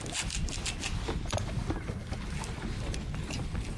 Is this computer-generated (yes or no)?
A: no